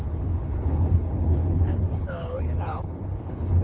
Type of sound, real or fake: fake